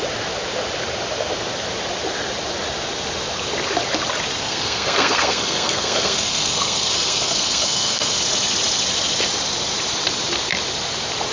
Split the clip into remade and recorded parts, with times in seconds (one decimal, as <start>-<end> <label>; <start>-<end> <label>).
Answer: 0.0-4.4 recorded; 4.4-8.1 remade; 8.1-11.3 recorded